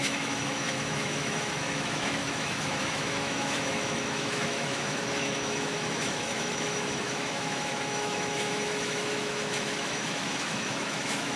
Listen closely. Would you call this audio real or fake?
fake